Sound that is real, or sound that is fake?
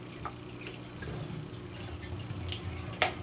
real